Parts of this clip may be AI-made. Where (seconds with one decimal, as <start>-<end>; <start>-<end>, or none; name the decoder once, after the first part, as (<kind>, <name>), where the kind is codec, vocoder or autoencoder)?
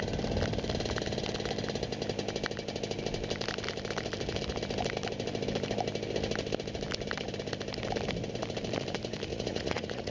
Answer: 9.3-10.1 (vocoder, Vocos)